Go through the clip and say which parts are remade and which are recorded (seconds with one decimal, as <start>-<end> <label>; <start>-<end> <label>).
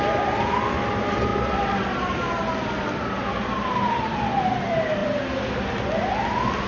0.0-6.7 recorded